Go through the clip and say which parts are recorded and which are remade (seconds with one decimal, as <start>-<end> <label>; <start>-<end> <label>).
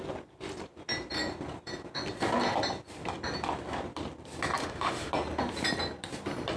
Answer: 0.0-4.6 recorded; 4.6-5.1 remade; 5.1-6.6 recorded